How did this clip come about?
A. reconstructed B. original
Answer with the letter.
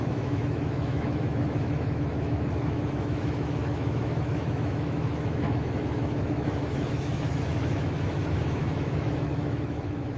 A